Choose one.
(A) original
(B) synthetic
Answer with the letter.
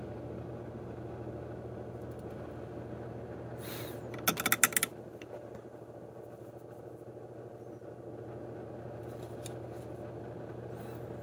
A